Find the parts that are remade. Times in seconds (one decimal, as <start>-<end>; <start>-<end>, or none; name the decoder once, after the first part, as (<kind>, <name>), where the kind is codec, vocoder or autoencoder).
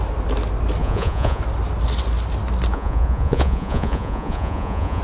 0.8-1.4 (vocoder, Vocos); 2.7-5.0